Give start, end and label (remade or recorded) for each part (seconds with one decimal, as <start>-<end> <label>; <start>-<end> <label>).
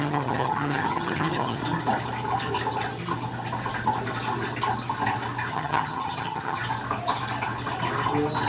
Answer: 0.0-1.6 remade; 1.6-5.5 recorded; 5.5-6.6 remade; 6.6-8.5 recorded